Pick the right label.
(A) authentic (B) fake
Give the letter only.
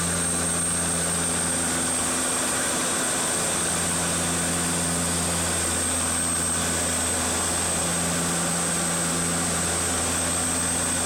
A